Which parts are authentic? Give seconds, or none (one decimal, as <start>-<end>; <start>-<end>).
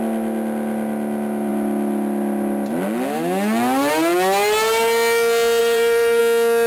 0.0-5.6; 6.2-6.7